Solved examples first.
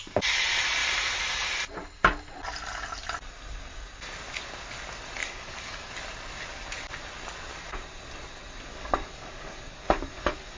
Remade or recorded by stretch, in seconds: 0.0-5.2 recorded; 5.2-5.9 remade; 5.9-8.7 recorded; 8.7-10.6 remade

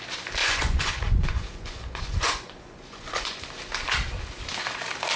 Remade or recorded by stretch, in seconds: 0.0-0.4 recorded; 0.4-3.5 remade; 3.5-5.2 recorded

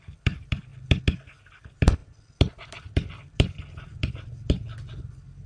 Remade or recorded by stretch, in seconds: 0.0-0.7 remade; 0.7-1.5 recorded; 1.5-2.0 remade; 2.0-2.7 recorded; 2.7-5.5 remade